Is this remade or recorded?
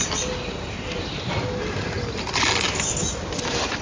recorded